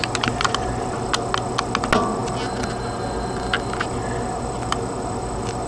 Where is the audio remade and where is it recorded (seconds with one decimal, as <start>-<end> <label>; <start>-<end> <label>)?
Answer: 0.0-5.7 recorded

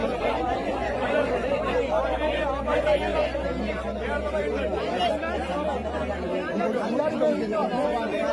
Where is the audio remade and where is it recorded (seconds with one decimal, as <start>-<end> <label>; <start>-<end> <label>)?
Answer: 0.0-1.6 remade; 1.6-8.3 recorded

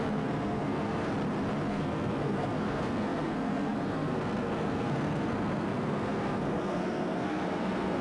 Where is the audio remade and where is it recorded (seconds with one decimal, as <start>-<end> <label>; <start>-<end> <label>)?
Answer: 0.0-1.1 remade; 1.1-1.7 recorded; 1.7-8.0 remade

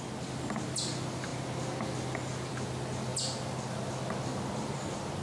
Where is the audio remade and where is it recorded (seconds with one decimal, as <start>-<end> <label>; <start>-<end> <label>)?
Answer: 0.0-5.2 recorded

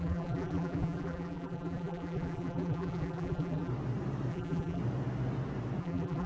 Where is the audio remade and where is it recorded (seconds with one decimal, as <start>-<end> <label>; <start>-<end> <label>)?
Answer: 0.0-3.7 remade; 3.7-4.3 recorded; 4.3-4.8 remade; 4.8-5.8 recorded; 5.8-6.3 remade